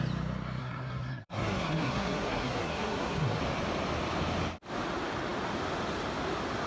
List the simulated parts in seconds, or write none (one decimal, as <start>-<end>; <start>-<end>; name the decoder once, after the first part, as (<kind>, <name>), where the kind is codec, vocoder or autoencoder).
0.6-3.4 (codec, SNAC)